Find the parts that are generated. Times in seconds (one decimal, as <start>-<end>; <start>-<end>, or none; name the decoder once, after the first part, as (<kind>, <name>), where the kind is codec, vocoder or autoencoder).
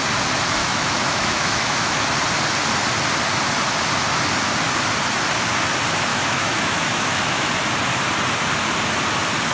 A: 0.6-2.0 (autoencoder, DAC-VAE); 6.1-7.5